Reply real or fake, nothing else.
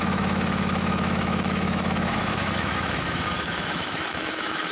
fake